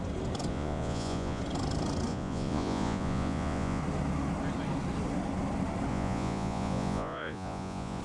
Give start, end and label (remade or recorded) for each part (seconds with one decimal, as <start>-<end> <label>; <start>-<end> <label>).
0.0-0.5 recorded; 0.5-1.4 remade; 1.4-2.1 recorded; 2.1-3.8 remade; 3.8-5.9 recorded; 5.9-8.0 remade